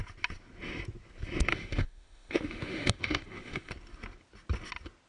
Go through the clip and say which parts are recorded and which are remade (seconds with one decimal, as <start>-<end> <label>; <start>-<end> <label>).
0.0-1.5 recorded; 1.5-3.7 remade; 3.7-5.1 recorded